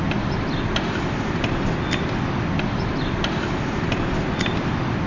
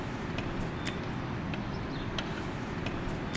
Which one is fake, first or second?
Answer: first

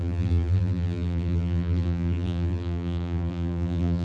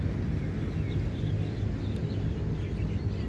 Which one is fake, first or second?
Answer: first